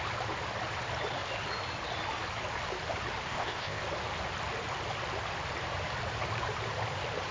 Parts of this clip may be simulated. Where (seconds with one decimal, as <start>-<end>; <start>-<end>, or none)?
3.3-3.8